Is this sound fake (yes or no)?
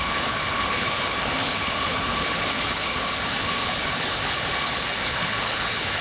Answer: yes